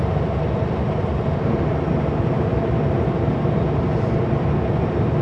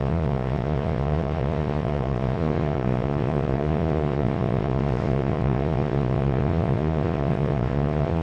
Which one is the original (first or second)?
first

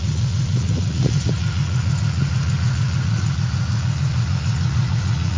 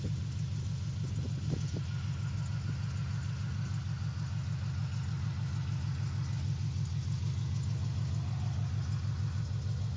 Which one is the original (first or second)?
second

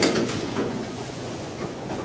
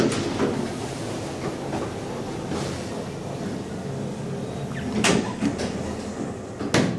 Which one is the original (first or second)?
second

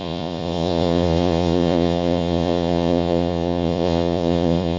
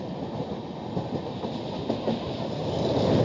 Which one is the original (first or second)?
second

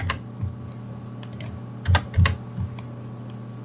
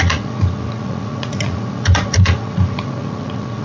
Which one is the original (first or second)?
first